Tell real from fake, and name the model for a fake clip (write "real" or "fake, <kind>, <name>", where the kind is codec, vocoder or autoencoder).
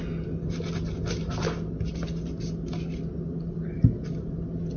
real